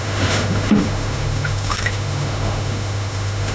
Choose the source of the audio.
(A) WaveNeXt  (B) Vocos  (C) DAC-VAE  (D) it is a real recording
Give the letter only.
C